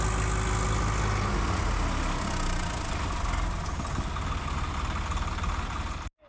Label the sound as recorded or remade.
recorded